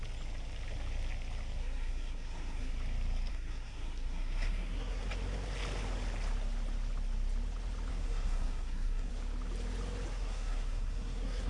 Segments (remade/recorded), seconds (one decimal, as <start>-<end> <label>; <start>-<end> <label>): 0.0-1.6 recorded; 1.6-2.7 remade; 2.7-3.3 recorded; 3.3-5.0 remade; 5.0-7.9 recorded; 7.9-9.1 remade; 9.1-10.1 recorded; 10.1-11.5 remade